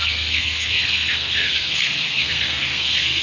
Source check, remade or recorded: remade